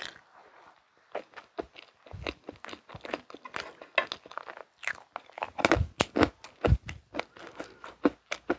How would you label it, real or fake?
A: real